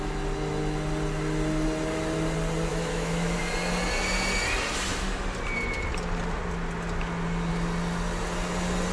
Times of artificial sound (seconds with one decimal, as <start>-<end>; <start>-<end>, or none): 2.7-3.4